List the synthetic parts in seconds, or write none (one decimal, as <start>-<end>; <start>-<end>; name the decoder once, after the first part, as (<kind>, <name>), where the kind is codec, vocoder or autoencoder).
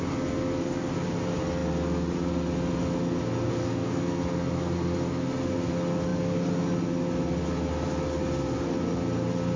3.6-4.2 (codec, SNAC)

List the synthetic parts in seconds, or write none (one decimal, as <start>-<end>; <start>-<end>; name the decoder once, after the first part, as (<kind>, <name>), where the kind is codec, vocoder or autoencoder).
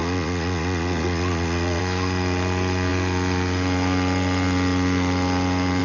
0.0-1.8 (vocoder, Vocos)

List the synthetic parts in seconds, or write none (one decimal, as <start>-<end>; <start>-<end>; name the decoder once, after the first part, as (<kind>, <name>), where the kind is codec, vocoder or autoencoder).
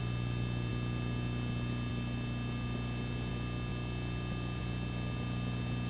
none